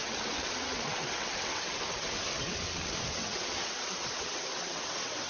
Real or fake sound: fake